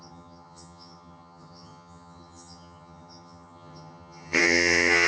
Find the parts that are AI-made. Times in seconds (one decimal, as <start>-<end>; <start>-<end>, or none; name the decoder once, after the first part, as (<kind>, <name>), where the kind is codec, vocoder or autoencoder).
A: 0.0-5.1 (vocoder, HiFi-GAN)